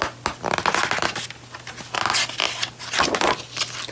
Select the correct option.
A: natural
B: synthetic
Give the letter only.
A